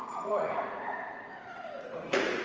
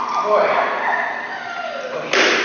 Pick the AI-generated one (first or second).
first